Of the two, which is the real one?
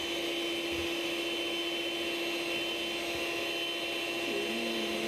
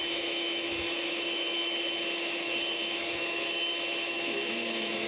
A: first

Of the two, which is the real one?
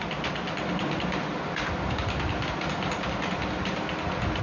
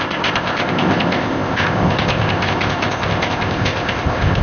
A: first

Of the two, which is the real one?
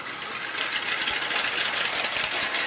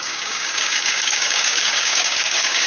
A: first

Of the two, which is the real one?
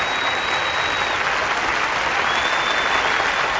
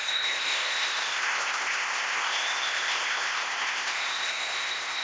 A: first